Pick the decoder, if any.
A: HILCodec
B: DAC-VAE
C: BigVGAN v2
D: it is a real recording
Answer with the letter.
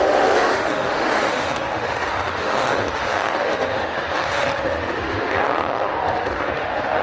B